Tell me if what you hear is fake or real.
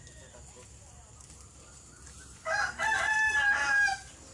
real